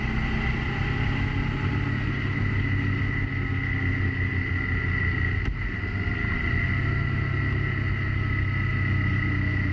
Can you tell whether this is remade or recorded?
recorded